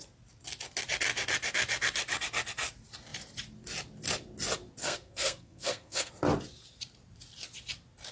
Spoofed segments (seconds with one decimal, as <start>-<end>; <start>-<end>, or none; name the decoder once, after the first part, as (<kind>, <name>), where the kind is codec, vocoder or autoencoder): 4.8-6.1 (codec, SNAC)

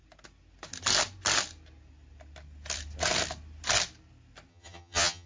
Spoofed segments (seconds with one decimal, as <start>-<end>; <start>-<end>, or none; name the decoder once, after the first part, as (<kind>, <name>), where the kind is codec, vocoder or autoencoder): 4.5-5.3 (vocoder, HiFi-GAN)